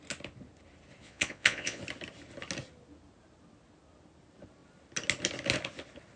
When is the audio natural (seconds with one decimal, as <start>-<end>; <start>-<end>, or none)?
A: 0.0-1.0; 1.8-6.2